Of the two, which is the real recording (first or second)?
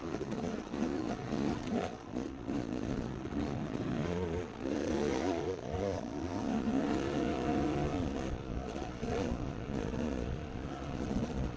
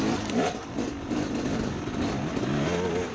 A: second